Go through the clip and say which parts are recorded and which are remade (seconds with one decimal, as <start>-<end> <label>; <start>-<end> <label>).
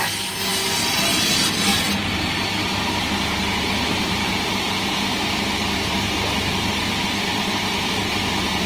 0.0-8.7 recorded